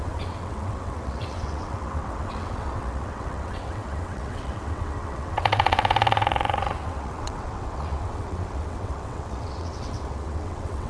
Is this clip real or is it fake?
fake